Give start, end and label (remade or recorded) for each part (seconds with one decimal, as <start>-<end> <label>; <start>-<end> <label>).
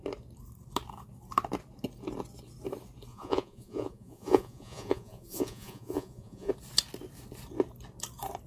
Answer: 0.0-3.1 recorded; 3.1-6.5 remade; 6.5-8.5 recorded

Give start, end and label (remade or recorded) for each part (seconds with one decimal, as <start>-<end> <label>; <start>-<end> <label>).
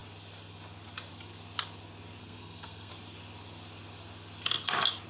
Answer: 0.0-2.2 recorded; 2.2-2.9 remade; 2.9-5.1 recorded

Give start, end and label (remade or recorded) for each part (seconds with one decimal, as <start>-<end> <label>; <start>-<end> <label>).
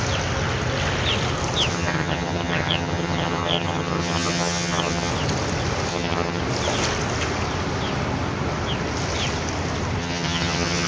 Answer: 0.0-1.7 recorded; 1.7-5.1 remade; 5.1-5.9 recorded; 5.9-6.4 remade; 6.4-10.0 recorded; 10.0-10.9 remade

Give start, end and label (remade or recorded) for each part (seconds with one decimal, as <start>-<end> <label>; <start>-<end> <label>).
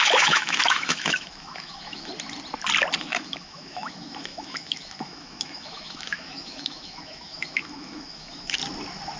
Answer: 0.0-2.1 remade; 2.1-3.0 recorded; 3.0-8.6 remade; 8.6-9.2 recorded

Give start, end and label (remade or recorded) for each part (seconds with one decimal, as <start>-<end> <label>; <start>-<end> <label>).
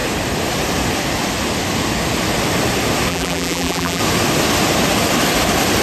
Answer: 0.0-3.1 recorded; 3.1-4.0 remade; 4.0-5.8 recorded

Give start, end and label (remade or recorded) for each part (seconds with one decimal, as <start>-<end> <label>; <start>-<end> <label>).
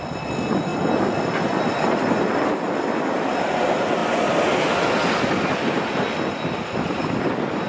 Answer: 0.0-7.7 recorded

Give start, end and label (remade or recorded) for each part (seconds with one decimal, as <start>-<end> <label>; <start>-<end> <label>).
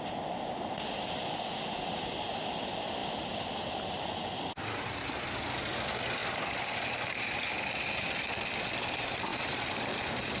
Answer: 0.0-6.2 recorded; 6.2-7.4 remade; 7.4-10.4 recorded